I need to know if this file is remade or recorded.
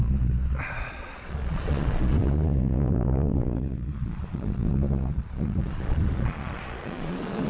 remade